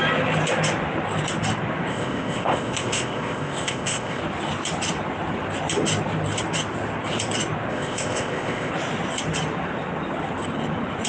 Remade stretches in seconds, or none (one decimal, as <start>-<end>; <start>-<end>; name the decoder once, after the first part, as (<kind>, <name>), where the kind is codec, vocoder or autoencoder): 1.9-4.2 (codec, ZipCodec); 7.7-8.7